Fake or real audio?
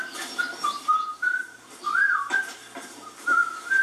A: fake